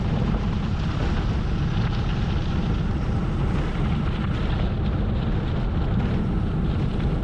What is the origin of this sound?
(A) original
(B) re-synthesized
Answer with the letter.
A